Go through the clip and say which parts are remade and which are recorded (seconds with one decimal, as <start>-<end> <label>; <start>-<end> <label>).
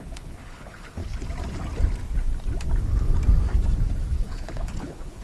0.0-1.0 remade; 1.0-4.1 recorded; 4.1-5.2 remade